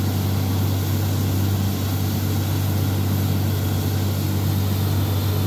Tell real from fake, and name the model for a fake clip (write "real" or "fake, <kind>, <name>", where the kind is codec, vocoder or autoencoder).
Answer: real